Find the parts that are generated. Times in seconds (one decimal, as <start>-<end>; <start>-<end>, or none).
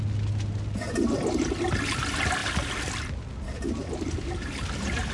none